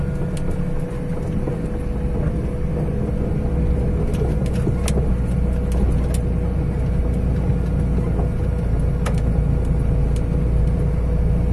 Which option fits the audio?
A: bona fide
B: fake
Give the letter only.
A